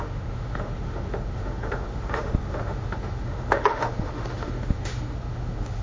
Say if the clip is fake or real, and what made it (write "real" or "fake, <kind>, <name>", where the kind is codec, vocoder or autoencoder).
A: fake, autoencoder, DAC-VAE